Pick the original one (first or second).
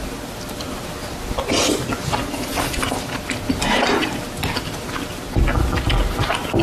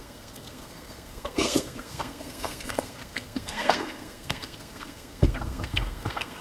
first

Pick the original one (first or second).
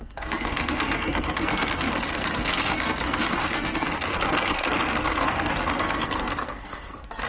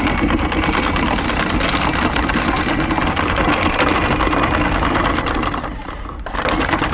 second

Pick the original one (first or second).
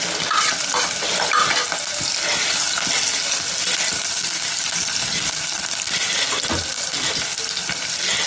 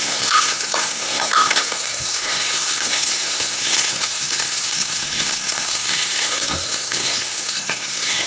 first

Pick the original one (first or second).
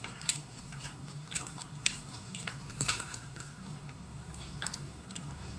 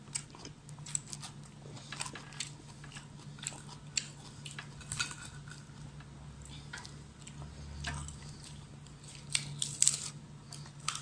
second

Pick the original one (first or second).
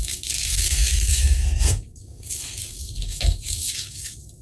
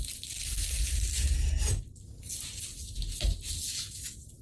second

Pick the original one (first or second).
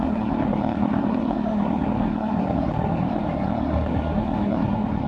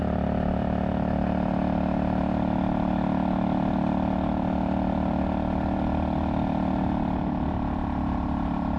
second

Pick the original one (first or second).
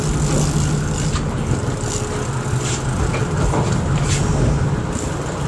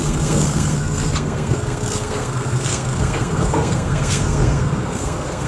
first